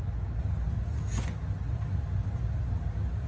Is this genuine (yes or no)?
yes